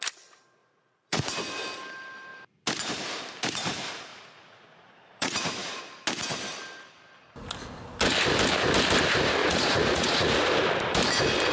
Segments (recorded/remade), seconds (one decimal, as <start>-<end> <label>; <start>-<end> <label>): 0.0-0.6 recorded; 0.6-1.4 remade; 1.4-4.1 recorded; 4.1-5.8 remade; 5.8-9.4 recorded; 9.4-10.5 remade; 10.5-11.5 recorded